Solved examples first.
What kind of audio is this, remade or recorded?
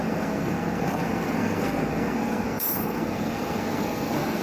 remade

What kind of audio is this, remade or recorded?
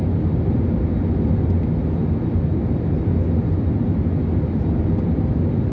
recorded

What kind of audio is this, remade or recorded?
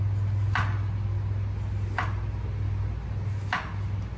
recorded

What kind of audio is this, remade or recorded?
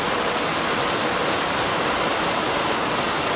recorded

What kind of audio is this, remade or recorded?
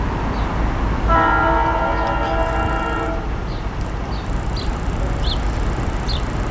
recorded